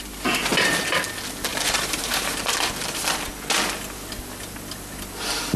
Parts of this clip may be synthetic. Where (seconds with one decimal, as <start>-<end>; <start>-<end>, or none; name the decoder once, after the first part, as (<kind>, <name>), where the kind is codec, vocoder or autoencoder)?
1.5-2.7 (vocoder, BigVGAN v2)